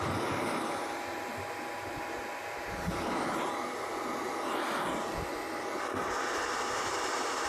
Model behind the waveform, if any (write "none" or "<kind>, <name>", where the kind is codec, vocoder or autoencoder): none